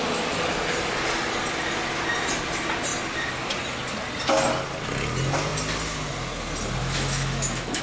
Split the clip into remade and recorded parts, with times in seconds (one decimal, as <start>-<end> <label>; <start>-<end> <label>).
0.0-6.8 recorded; 6.8-7.8 remade